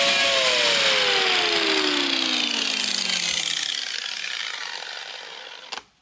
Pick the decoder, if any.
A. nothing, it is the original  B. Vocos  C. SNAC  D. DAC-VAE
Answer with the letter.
A